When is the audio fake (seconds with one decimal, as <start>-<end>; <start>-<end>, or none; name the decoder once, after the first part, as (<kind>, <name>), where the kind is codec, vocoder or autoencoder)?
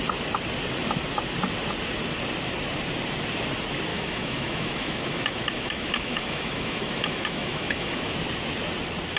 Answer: 3.9-8.1 (autoencoder, DAC-VAE)